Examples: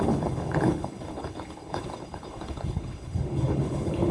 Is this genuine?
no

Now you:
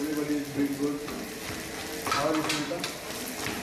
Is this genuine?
yes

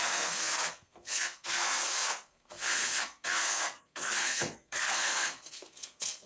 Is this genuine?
no